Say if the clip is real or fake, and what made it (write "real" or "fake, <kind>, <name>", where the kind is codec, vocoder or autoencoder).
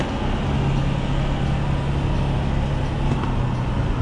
real